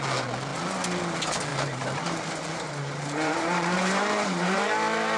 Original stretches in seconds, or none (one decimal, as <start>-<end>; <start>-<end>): 0.0-1.5; 4.6-5.2